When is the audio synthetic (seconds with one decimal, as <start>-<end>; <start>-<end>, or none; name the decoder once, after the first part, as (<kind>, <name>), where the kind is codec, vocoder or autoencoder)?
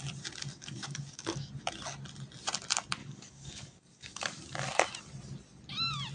0.5-1.5 (codec, DAC); 3.0-4.4